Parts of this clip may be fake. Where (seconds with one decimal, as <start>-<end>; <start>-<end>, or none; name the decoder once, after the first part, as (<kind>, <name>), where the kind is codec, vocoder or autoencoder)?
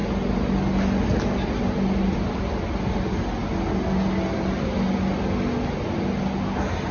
none